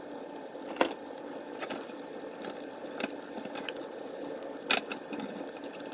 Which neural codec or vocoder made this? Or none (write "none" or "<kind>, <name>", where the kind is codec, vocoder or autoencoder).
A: none